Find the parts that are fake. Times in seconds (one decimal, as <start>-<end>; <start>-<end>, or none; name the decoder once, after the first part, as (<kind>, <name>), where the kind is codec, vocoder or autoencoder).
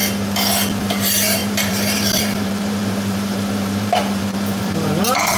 0.8-5.4 (vocoder, BigVGAN v2)